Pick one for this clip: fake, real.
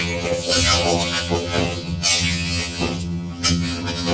fake